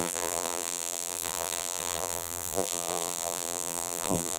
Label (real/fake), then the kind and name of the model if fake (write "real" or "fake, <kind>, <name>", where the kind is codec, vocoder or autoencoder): fake, vocoder, BigVGAN v2